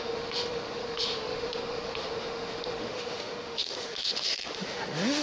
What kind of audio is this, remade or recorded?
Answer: remade